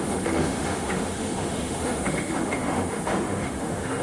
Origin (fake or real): fake